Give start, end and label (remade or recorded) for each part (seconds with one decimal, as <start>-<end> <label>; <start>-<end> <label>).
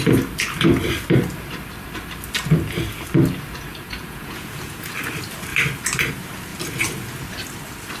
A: 0.0-3.7 recorded; 3.7-4.9 remade; 4.9-8.0 recorded